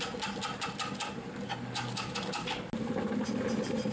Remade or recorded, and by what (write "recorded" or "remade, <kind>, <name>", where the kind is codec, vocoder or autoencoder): recorded